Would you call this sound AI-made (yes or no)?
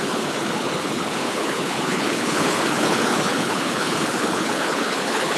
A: yes